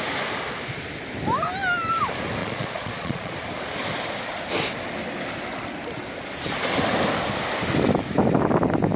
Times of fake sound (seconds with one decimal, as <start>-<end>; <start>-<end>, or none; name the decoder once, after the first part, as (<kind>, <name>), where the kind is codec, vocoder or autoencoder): 2.4-3.3 (vocoder, Vocos)